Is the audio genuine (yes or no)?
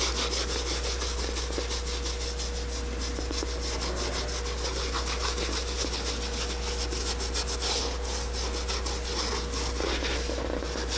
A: yes